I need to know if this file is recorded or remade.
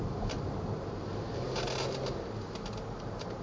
recorded